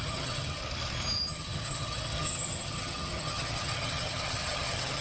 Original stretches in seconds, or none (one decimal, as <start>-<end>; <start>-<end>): 0.6-1.3